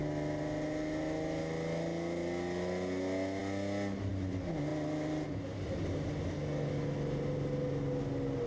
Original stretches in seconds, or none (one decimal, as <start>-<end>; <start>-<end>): 0.0-8.5